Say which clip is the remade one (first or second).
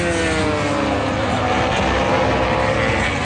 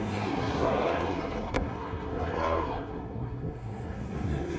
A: second